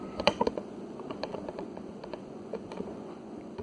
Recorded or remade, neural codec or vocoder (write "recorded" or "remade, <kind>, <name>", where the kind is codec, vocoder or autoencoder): remade, vocoder, Vocos